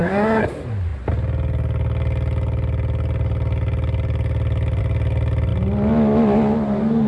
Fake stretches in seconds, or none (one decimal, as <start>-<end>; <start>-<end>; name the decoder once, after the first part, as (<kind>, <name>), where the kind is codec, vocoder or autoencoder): 0.0-0.5 (codec, SNAC)

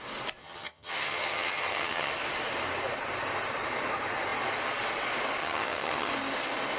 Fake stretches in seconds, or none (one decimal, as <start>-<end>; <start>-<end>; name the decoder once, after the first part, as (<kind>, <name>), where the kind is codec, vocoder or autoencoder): 0.4-2.1 (vocoder, HiFi-GAN); 5.4-6.1

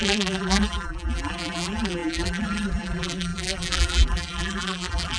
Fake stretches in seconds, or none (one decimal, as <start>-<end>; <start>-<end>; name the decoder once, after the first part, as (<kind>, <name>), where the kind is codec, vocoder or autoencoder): 0.0-5.2 (vocoder, BigVGAN v2)

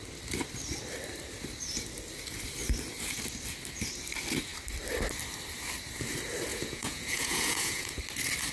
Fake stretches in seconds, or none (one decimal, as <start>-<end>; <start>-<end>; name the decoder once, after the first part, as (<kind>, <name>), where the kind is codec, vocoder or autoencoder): 6.5-8.0 (vocoder, Vocos)